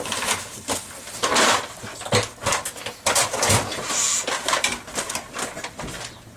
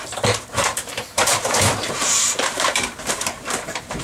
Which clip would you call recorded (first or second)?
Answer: first